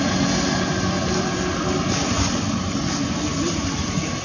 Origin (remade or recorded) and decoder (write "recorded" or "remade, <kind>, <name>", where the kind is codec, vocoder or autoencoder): recorded